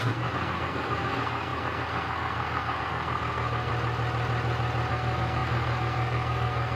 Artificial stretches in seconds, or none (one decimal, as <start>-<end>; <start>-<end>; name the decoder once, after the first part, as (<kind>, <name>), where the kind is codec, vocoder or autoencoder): 0.0-3.7 (codec, SNAC); 4.9-6.8